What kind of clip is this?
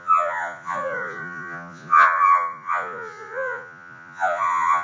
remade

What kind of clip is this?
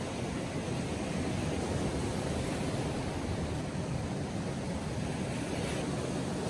recorded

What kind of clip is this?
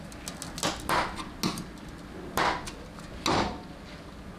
recorded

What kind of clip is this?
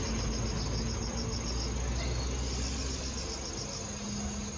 recorded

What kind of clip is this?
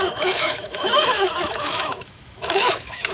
remade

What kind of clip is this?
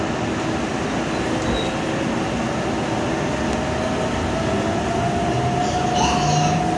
recorded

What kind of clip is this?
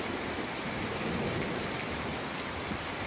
recorded